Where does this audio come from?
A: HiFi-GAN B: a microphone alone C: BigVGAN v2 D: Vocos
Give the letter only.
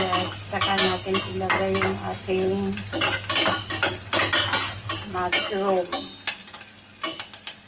B